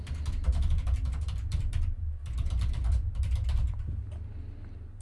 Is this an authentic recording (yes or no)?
no